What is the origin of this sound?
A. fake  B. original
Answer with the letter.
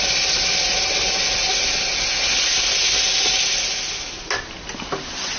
B